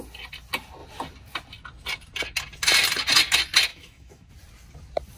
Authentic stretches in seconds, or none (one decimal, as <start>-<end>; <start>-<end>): 0.0-3.7; 4.3-5.2